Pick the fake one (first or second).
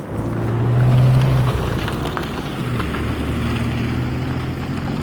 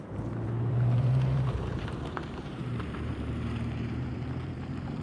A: second